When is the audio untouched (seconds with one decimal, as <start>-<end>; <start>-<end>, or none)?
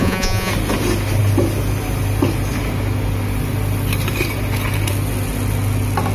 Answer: 0.5-6.1